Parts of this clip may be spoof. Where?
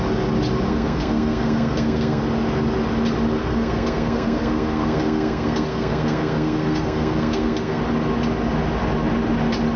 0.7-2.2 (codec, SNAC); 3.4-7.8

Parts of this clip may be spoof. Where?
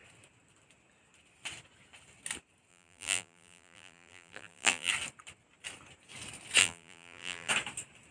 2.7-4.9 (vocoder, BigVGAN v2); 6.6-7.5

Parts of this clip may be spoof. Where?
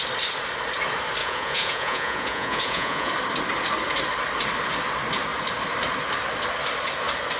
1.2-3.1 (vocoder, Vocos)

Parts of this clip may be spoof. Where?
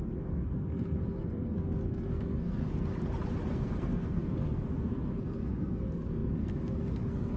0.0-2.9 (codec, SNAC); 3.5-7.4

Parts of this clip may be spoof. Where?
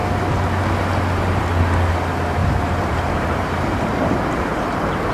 2.4-5.1 (vocoder, BigVGAN v2)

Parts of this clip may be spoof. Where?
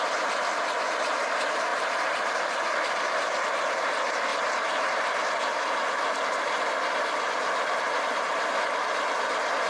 none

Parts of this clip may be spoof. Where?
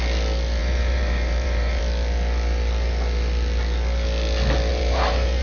0.6-1.8 (vocoder, BigVGAN v2); 4.7-5.4